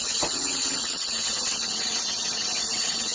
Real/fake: fake